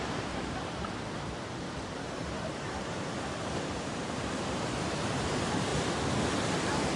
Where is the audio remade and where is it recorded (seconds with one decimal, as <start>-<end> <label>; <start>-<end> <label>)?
0.0-5.7 remade; 5.7-7.0 recorded

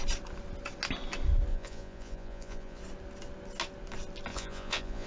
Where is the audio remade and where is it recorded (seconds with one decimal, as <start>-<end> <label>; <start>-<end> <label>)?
0.0-1.5 recorded; 1.5-2.8 remade; 2.8-4.3 recorded; 4.3-5.1 remade

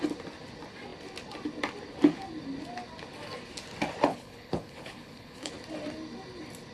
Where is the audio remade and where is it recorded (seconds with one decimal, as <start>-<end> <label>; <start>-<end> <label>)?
0.0-4.1 recorded; 4.1-5.5 remade; 5.5-6.7 recorded

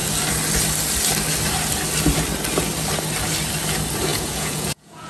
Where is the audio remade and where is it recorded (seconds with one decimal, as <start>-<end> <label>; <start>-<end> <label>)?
0.0-4.1 recorded; 4.1-5.1 remade

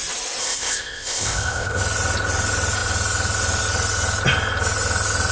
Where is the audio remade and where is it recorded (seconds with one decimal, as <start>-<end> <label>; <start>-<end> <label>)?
0.0-0.4 recorded; 0.4-1.8 remade; 1.8-5.3 recorded

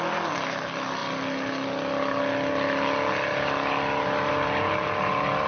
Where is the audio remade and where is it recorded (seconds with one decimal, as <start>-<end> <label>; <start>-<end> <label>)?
0.0-5.5 recorded

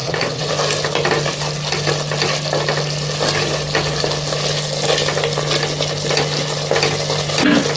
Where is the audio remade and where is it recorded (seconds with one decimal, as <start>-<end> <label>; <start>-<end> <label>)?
0.0-0.5 remade; 0.5-7.8 recorded